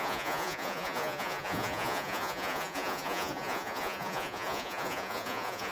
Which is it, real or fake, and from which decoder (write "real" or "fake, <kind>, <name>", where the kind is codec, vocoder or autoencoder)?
fake, vocoder, Vocos